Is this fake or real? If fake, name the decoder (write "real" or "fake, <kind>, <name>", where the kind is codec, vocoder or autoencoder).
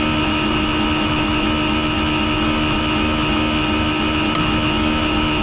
real